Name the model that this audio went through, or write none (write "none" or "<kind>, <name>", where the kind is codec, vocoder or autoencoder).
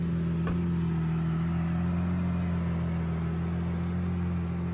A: none